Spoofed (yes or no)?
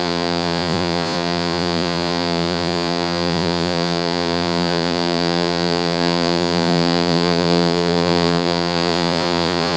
yes